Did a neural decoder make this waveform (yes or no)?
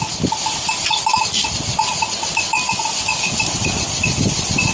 no